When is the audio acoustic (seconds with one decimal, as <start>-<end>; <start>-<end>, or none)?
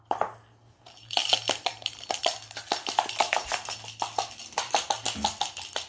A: 0.0-5.9